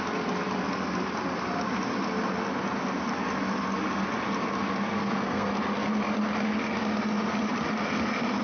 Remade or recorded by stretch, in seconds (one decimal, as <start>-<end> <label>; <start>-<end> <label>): 0.0-4.9 recorded; 4.9-5.5 remade; 5.5-8.4 recorded